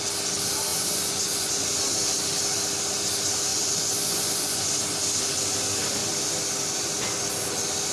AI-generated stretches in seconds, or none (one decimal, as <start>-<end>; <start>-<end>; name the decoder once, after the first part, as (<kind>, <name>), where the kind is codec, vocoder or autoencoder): 0.7-1.5 (vocoder, Vocos); 3.5-4.7